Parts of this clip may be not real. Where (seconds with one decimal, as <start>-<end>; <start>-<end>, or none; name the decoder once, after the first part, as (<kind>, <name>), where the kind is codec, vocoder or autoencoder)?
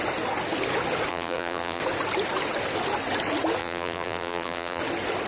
1.1-1.8 (vocoder, BigVGAN v2); 3.6-4.8